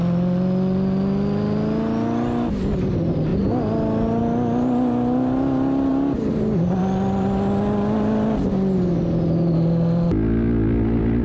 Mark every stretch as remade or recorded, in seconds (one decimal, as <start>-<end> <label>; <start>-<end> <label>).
0.0-11.2 recorded